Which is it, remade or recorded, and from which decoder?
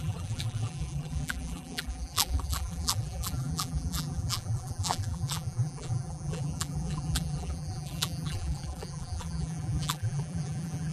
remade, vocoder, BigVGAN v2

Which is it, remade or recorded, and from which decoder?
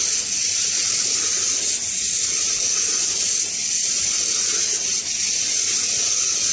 recorded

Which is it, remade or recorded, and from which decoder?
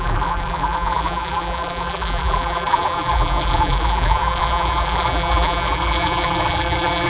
remade, vocoder, BigVGAN v2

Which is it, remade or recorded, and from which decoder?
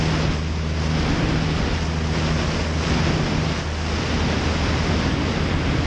recorded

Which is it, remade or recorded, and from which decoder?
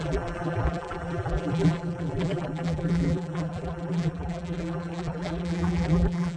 remade, vocoder, BigVGAN v2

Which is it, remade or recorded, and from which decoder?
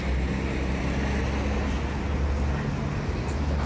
recorded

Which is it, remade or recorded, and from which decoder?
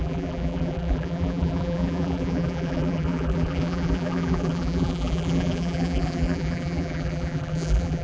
remade, vocoder, BigVGAN v2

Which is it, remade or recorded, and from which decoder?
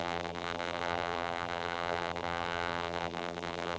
remade, vocoder, BigVGAN v2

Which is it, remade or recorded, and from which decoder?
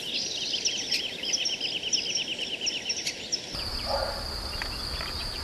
recorded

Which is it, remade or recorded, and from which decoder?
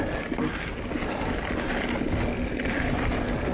recorded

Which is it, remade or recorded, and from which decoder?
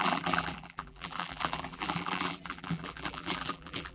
remade, vocoder, BigVGAN v2